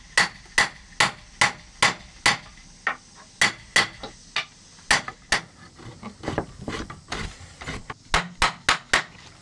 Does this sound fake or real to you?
real